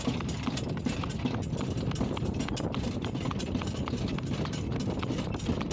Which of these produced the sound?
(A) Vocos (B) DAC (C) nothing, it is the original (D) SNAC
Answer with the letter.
C